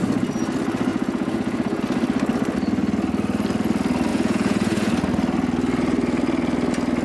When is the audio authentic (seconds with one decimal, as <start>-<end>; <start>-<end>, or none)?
0.0-0.9; 1.8-4.1; 4.9-7.0